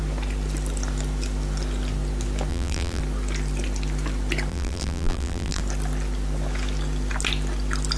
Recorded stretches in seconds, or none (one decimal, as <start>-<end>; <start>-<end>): 0.0-2.5; 3.0-4.5; 5.6-8.0